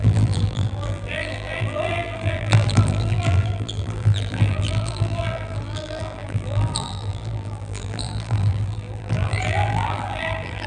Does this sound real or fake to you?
fake